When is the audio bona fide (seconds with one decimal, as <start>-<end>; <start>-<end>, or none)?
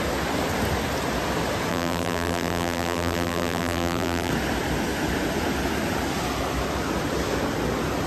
0.0-1.7; 4.3-8.1